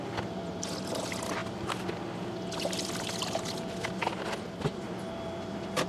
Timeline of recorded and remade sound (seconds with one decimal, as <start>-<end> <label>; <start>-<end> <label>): 0.0-5.9 recorded